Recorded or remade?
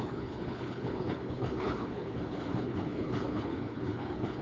remade